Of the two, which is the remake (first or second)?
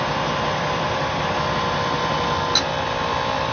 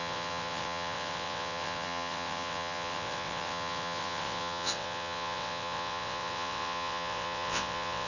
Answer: second